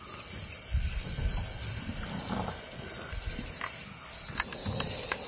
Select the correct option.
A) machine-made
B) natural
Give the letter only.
A